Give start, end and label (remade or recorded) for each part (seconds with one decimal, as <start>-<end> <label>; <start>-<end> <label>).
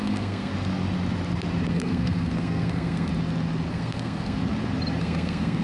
0.0-0.5 remade; 0.5-1.7 recorded; 1.7-3.1 remade; 3.1-3.7 recorded; 3.7-4.4 remade; 4.4-5.0 recorded; 5.0-5.6 remade